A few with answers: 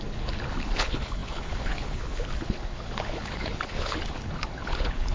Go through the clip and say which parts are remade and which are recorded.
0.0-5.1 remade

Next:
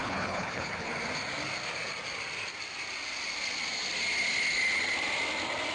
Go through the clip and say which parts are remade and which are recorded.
0.0-0.9 remade; 0.9-5.7 recorded